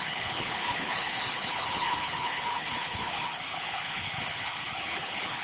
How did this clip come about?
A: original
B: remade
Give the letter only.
B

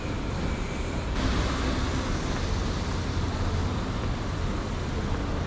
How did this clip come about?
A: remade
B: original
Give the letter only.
B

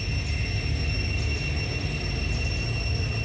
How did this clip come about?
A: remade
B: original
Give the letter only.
B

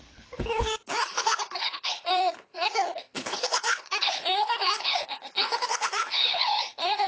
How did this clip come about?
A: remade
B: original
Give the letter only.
A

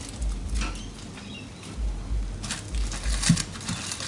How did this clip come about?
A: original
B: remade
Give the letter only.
A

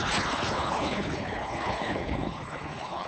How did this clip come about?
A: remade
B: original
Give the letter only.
A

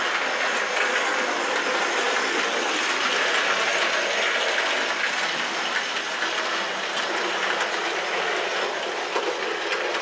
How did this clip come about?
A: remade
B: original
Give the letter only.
B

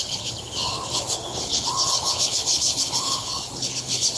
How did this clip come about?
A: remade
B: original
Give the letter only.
A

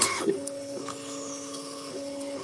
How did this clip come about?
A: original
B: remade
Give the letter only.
B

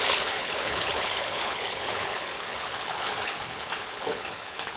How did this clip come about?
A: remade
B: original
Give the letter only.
A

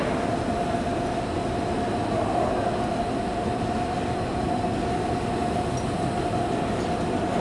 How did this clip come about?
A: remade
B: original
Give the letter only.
B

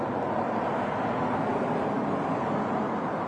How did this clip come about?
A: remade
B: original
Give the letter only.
B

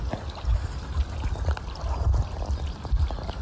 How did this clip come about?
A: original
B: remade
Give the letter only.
A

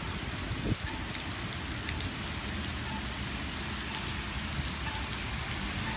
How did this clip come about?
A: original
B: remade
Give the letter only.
A